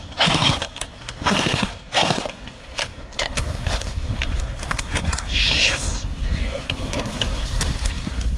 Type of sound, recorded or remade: remade